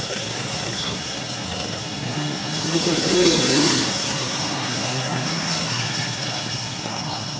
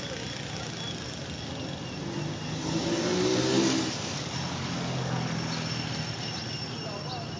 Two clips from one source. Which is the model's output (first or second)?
first